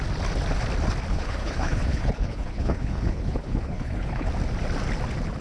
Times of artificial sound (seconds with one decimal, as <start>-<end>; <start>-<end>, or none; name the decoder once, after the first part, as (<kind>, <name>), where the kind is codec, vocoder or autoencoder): 1.1-4.3 (codec, HILCodec)